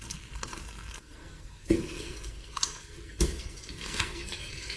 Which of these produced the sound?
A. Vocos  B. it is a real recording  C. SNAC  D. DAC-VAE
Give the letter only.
C